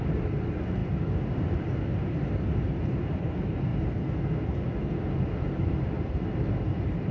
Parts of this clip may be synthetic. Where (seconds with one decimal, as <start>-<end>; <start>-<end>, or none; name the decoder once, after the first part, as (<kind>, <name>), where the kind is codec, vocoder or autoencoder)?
0.0-3.7 (vocoder, BigVGAN v2); 5.4-7.1